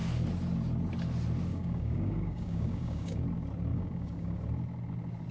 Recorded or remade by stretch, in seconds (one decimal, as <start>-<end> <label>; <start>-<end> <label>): 0.0-1.5 recorded; 1.5-3.2 remade; 3.2-3.7 recorded; 3.7-4.4 remade; 4.4-5.3 recorded